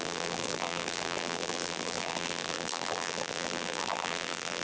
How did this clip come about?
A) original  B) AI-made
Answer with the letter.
B